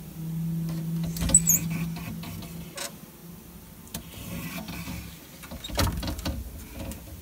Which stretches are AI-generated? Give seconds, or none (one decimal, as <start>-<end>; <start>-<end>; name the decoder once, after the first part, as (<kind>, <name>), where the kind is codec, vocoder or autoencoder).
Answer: none